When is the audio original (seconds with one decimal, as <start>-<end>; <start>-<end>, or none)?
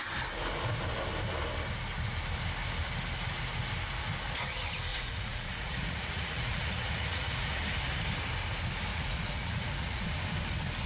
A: 0.0-4.9; 7.6-8.9; 10.1-10.9